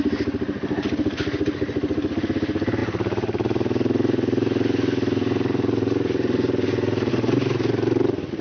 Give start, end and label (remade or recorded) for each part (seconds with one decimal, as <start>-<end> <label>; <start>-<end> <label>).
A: 0.0-8.4 recorded